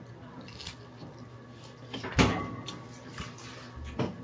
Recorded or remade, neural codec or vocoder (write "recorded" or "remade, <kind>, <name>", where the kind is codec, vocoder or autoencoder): recorded